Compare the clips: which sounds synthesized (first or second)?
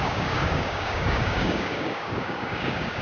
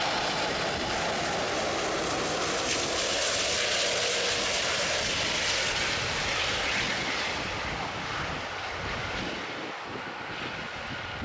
first